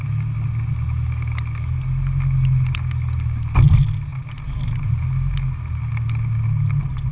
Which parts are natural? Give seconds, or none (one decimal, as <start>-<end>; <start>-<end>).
0.0-7.1